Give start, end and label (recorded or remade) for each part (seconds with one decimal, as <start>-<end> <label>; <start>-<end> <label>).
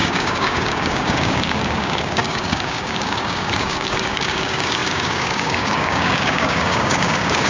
0.0-7.5 remade